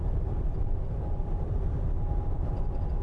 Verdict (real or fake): real